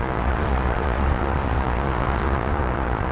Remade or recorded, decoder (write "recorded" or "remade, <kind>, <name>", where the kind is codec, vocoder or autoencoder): remade, vocoder, Vocos